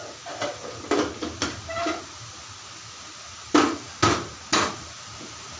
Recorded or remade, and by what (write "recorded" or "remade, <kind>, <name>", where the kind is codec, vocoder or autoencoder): recorded